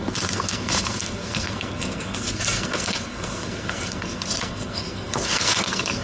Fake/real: fake